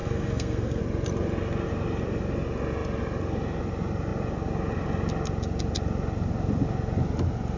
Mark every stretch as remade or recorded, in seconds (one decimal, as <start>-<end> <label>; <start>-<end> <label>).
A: 0.0-0.8 remade; 0.8-7.6 recorded